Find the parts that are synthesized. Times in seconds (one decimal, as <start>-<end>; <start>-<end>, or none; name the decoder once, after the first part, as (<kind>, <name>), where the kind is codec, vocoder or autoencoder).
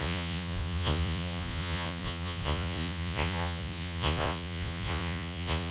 0.0-5.7 (vocoder, Vocos)